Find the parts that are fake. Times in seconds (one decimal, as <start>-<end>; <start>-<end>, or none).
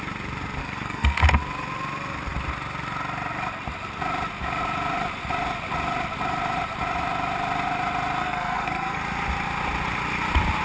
0.6-1.2; 8.2-9.0